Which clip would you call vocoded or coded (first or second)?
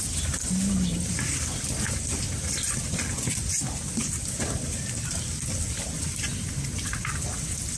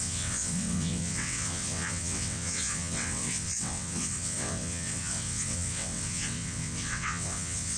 second